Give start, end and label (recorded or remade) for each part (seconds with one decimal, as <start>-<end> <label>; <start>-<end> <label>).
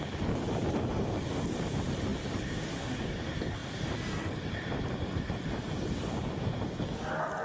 0.0-3.6 recorded; 3.6-4.3 remade; 4.3-7.4 recorded